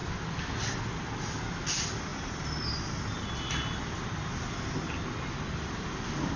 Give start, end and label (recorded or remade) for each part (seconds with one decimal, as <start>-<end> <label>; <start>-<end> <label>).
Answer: 0.0-6.4 recorded